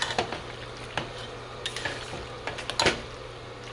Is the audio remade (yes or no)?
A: no